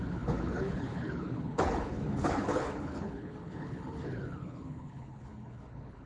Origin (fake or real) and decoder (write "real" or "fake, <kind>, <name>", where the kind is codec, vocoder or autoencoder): fake, codec, HILCodec